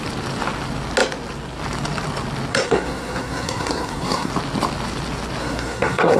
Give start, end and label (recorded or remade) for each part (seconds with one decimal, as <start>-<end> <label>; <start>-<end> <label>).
0.0-2.5 recorded; 2.5-4.3 remade; 4.3-5.4 recorded; 5.4-6.2 remade